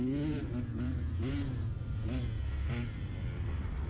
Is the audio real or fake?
real